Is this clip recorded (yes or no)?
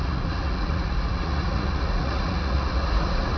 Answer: no